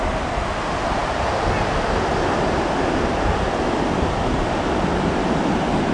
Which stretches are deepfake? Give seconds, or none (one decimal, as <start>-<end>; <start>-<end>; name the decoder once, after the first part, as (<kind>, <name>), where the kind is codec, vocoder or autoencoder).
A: none